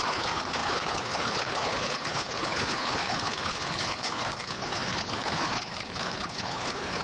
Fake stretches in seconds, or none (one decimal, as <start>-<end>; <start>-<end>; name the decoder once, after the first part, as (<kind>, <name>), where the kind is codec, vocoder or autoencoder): 0.0-7.0 (codec, HILCodec)